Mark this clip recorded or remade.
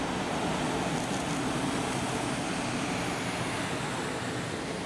recorded